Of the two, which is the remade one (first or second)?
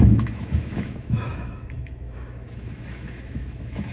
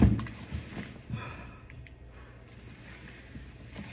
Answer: first